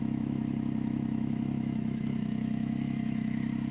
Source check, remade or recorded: remade